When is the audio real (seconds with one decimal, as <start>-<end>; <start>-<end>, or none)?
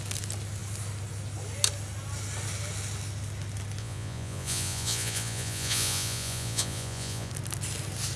0.0-3.8; 7.3-8.2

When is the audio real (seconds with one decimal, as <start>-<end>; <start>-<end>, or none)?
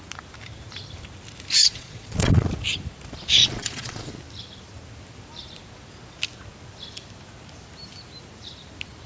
0.0-1.7; 2.5-3.4; 4.1-9.1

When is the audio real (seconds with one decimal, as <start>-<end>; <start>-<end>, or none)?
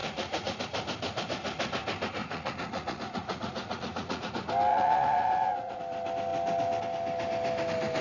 0.6-2.2; 4.3-4.7; 5.8-8.0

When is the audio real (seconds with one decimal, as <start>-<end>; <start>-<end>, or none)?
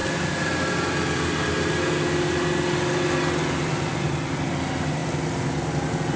0.0-6.2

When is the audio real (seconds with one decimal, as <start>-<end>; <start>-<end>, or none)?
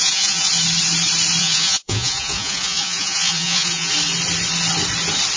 0.5-1.4; 3.9-5.4